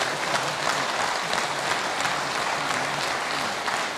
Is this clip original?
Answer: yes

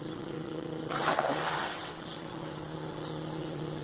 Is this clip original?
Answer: no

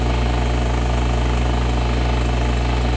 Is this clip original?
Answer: yes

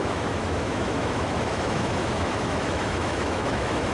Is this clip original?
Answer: no